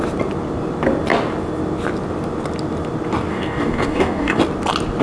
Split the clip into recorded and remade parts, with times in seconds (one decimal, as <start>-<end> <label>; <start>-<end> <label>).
0.0-3.3 recorded; 3.3-4.4 remade; 4.4-5.0 recorded